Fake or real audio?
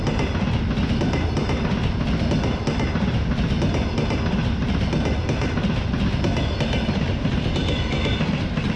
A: real